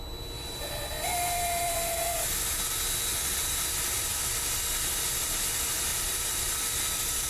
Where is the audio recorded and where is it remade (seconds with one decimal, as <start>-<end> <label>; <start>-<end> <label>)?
0.0-5.9 recorded; 5.9-6.5 remade; 6.5-7.3 recorded